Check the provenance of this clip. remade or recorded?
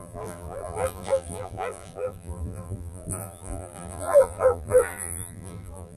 remade